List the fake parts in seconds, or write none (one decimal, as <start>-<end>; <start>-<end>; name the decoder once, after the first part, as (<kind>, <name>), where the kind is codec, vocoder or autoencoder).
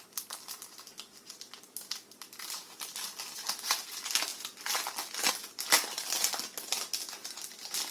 none